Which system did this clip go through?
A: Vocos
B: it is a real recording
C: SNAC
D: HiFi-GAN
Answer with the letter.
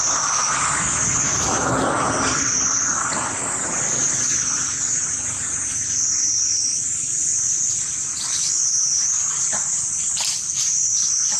B